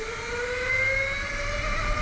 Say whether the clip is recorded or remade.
recorded